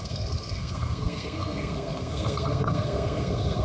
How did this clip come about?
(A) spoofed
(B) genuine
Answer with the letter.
A